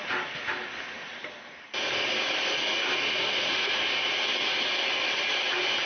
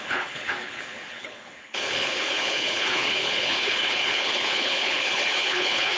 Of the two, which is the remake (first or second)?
second